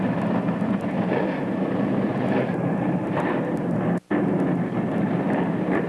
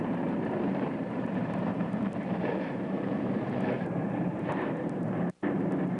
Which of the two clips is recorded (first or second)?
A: first